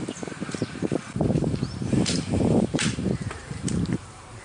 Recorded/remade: remade